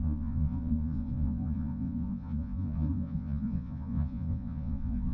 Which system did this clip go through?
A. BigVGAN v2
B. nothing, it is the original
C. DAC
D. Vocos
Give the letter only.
D